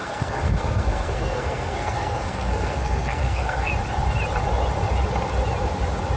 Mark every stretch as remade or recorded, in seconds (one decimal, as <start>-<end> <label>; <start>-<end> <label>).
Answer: 0.0-3.7 remade; 3.7-6.2 recorded